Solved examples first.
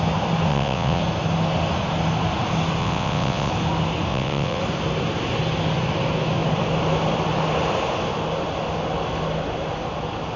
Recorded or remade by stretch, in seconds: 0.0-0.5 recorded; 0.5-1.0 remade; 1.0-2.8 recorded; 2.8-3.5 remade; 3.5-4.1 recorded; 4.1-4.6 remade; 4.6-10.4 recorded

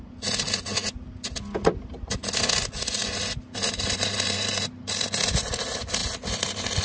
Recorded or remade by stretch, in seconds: 0.0-6.8 recorded